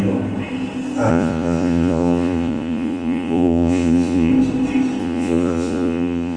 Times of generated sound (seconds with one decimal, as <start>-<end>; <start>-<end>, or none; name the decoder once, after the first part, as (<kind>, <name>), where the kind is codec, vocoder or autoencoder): 1.1-4.3 (vocoder, Vocos); 5.0-6.4